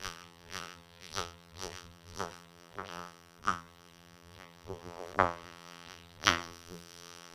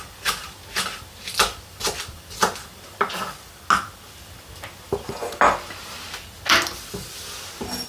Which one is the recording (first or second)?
second